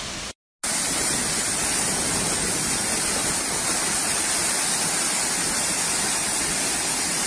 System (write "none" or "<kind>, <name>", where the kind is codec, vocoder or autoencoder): none